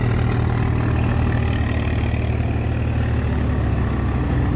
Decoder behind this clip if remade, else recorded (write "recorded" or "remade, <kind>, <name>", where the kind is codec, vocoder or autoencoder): recorded